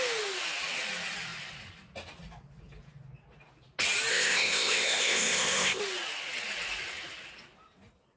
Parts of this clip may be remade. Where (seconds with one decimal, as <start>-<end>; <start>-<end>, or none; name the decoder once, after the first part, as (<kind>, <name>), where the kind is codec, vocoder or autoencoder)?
4.1-5.8 (codec, ZipCodec)